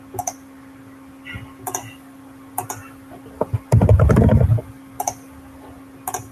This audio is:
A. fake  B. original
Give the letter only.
B